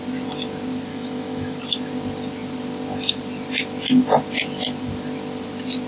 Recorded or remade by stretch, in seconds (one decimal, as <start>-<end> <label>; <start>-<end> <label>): 0.0-0.9 recorded; 0.9-1.6 remade; 1.6-5.9 recorded